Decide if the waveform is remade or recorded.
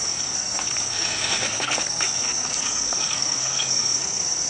remade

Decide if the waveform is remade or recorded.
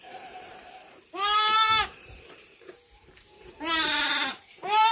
remade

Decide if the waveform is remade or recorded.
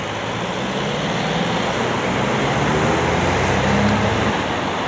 recorded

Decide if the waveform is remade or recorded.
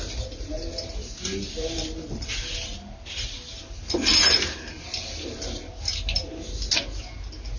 recorded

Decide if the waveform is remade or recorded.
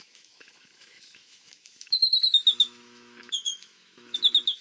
remade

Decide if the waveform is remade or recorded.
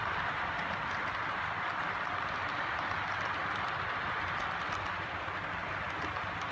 recorded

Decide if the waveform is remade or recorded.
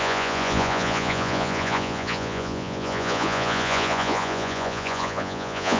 remade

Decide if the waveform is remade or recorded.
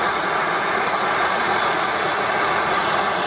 remade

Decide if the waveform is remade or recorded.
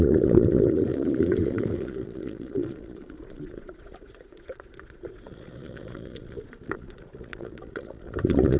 remade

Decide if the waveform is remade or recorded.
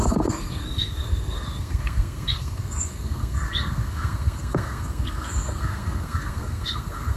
remade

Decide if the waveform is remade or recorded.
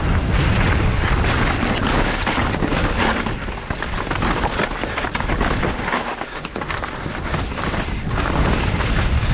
recorded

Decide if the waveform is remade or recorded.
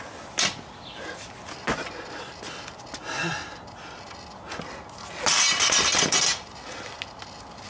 recorded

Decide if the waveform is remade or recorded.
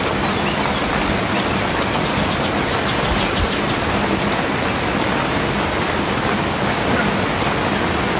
recorded